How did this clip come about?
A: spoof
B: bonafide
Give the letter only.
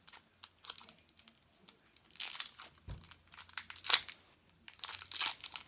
B